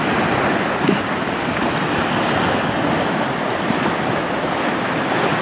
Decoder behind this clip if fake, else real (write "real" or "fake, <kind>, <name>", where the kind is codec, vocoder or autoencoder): real